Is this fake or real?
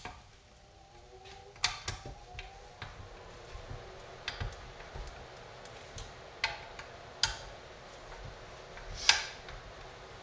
real